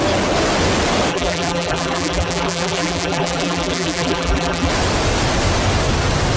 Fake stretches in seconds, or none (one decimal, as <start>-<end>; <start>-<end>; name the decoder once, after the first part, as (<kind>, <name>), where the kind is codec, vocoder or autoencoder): 1.1-4.7 (vocoder, BigVGAN v2)